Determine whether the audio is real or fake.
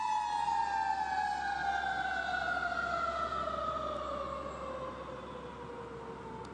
real